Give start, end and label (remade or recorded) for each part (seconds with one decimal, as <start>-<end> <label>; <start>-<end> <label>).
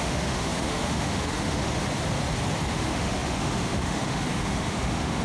0.0-1.8 remade; 1.8-2.7 recorded; 2.7-5.2 remade